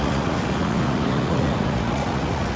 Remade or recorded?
remade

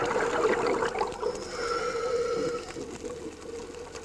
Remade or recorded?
recorded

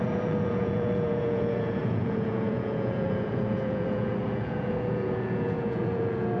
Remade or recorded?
remade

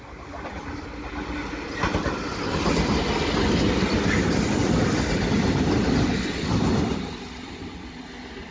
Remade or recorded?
recorded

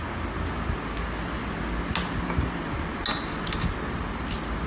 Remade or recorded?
recorded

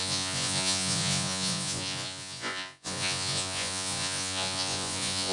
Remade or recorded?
remade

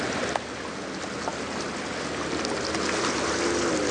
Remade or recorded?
recorded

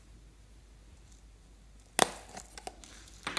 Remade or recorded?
recorded